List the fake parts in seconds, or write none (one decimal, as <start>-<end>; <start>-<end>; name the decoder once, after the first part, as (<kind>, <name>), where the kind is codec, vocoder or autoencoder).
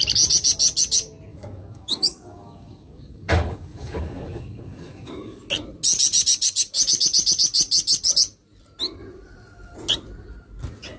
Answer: 1.3-5.4 (codec, DAC)